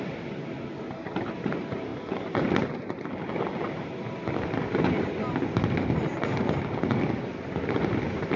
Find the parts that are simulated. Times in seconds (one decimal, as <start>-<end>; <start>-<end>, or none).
none